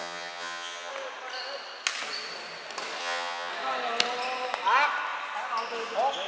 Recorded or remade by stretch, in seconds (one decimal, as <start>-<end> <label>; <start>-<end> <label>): 0.0-0.9 remade; 0.9-3.0 recorded; 3.0-3.5 remade; 3.5-6.3 recorded